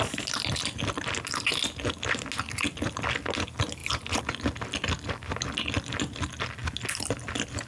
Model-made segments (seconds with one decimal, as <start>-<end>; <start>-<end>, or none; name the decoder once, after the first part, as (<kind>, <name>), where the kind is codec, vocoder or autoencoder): none